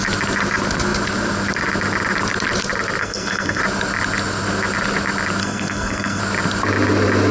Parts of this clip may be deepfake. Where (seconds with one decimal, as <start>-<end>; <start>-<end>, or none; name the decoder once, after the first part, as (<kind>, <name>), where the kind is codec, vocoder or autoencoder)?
3.0-3.6 (codec, SNAC); 5.4-6.2